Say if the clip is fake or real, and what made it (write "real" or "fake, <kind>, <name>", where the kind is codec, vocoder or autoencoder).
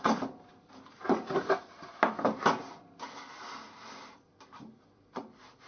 fake, vocoder, BigVGAN v2